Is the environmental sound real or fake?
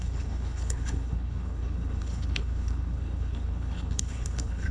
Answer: fake